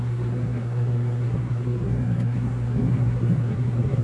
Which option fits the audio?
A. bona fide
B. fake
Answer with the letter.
B